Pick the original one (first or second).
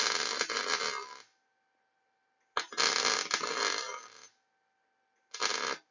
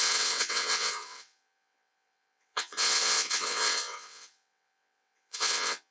first